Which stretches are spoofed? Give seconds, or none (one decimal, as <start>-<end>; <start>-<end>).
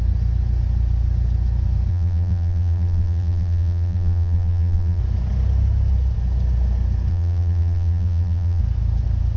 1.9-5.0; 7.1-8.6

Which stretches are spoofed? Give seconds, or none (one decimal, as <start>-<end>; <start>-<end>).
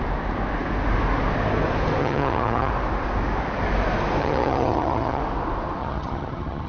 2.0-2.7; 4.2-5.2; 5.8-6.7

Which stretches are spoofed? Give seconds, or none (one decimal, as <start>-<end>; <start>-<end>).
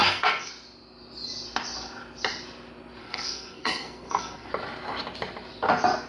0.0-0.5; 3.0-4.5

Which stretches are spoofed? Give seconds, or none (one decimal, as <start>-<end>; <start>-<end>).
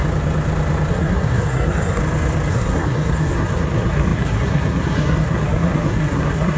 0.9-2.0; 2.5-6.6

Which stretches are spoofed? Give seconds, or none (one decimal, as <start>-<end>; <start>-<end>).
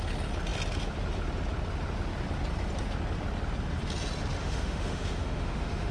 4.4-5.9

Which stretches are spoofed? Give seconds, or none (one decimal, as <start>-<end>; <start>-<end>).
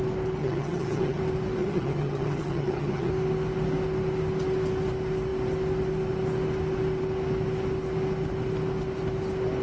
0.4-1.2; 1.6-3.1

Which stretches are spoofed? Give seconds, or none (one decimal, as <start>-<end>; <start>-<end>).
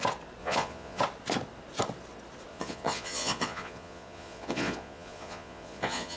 0.4-1.0; 2.5-6.2